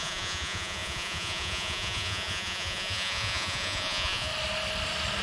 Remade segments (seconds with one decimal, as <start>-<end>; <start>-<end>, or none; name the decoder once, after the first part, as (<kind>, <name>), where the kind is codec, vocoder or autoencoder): 0.0-4.3 (vocoder, Vocos)